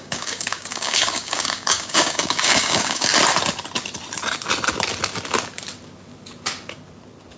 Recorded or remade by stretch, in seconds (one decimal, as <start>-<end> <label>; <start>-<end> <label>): 0.0-3.1 remade; 3.1-7.4 recorded

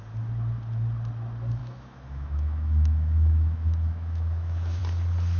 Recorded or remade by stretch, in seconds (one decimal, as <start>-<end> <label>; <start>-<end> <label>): 0.0-1.6 recorded; 1.6-4.8 remade; 4.8-5.4 recorded

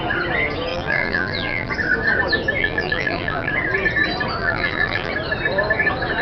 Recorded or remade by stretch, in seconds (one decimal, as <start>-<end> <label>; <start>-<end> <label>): 0.0-0.7 recorded; 0.7-1.7 remade; 1.7-2.6 recorded; 2.6-3.5 remade; 3.5-4.4 recorded; 4.4-5.1 remade; 5.1-6.2 recorded

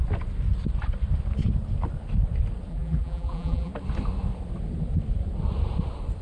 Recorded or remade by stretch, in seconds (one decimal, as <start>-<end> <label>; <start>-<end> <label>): 0.0-2.7 recorded; 2.7-3.7 remade; 3.7-6.2 recorded

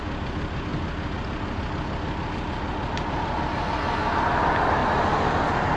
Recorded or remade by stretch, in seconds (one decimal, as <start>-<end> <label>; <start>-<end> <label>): 0.0-5.8 recorded

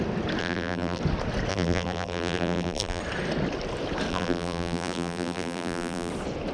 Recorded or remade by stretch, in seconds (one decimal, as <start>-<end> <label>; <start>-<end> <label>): 0.0-0.4 recorded; 0.4-1.0 remade; 1.0-1.5 recorded; 1.5-3.0 remade; 3.0-4.1 recorded; 4.1-6.1 remade; 6.1-6.5 recorded